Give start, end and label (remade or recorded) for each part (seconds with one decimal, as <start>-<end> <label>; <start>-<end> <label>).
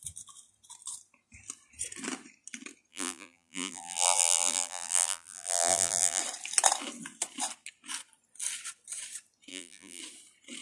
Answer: 0.0-2.9 recorded; 2.9-6.2 remade; 6.2-9.5 recorded; 9.5-10.0 remade; 10.0-10.6 recorded